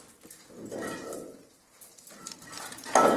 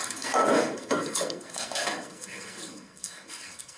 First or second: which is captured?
first